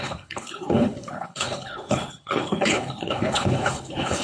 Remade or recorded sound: remade